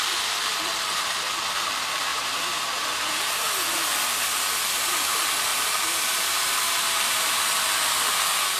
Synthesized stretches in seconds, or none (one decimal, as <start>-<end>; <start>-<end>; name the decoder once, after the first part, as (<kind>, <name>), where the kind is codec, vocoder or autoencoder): 2.1-3.5 (vocoder, BigVGAN v2); 5.5-7.4